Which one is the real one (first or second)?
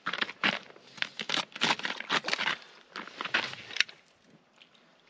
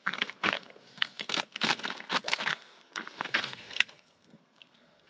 first